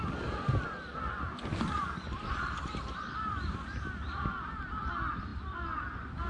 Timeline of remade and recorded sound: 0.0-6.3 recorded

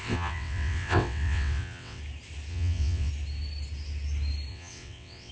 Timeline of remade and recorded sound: 0.0-2.0 remade; 2.0-2.5 recorded; 2.5-3.1 remade; 3.1-4.5 recorded; 4.5-5.3 remade

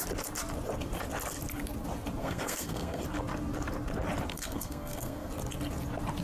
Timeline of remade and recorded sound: 0.0-2.2 recorded; 2.2-3.0 remade; 3.0-4.3 recorded; 4.3-5.3 remade; 5.3-6.2 recorded

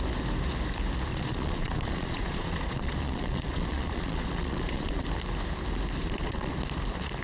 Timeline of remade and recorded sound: 0.0-1.1 recorded; 1.1-5.0 remade; 5.0-6.0 recorded; 6.0-6.5 remade; 6.5-7.2 recorded